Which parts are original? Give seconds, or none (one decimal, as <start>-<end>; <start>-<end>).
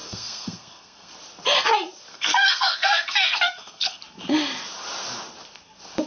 1.1-2.1; 4.0-6.1